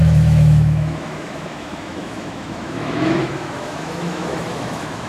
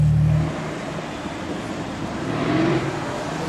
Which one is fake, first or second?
first